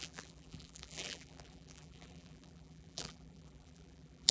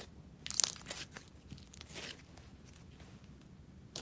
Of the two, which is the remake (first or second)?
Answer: first